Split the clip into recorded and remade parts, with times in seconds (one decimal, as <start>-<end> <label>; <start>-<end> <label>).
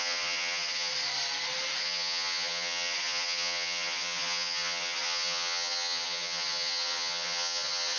0.0-0.9 remade; 0.9-1.8 recorded; 1.8-8.0 remade